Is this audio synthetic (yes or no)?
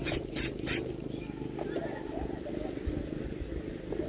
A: no